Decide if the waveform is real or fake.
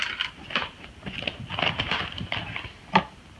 real